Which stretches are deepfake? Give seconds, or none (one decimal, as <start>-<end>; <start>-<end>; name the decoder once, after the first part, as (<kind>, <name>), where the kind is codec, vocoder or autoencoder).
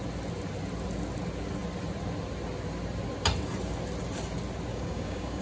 4.7-5.4 (codec, DAC)